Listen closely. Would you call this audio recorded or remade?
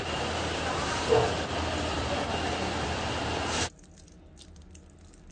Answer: recorded